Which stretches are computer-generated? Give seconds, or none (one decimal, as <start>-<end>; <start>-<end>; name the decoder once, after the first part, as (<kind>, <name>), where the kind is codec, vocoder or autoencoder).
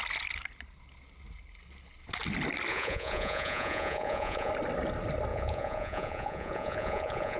2.7-4.5 (vocoder, Vocos); 5.3-7.4